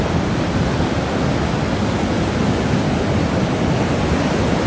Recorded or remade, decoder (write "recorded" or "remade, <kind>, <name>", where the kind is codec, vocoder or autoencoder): recorded